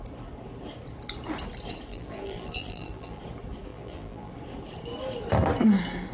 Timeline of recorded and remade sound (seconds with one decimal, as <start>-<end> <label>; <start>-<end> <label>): 0.0-1.9 recorded; 1.9-3.2 remade; 3.2-3.7 recorded; 3.7-4.3 remade; 4.3-6.1 recorded